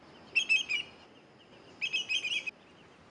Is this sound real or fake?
real